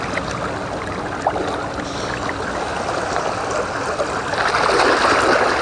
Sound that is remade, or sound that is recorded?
recorded